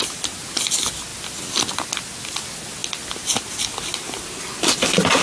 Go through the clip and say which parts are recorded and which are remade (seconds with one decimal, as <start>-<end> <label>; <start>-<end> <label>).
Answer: 0.0-5.2 recorded